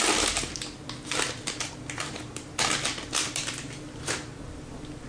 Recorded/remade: recorded